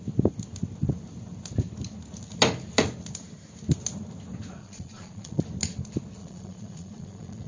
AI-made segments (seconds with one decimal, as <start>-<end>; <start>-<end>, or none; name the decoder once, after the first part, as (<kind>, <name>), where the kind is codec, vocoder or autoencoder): 4.6-5.4 (vocoder, Vocos); 6.2-7.5